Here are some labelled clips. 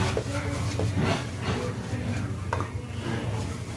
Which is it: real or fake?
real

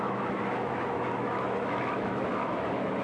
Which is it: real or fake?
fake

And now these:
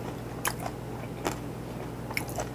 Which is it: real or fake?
real